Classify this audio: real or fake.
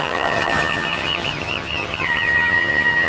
fake